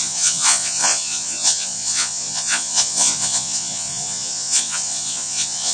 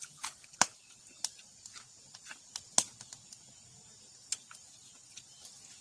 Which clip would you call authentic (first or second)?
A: second